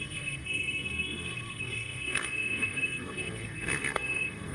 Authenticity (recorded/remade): remade